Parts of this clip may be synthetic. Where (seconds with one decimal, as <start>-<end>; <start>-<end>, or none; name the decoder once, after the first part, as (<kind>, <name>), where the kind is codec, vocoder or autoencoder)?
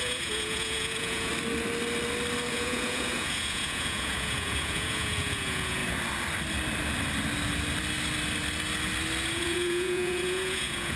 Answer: 0.0-1.3 (vocoder, Vocos); 2.5-5.8; 9.3-11.0